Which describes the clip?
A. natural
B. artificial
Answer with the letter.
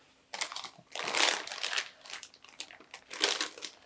A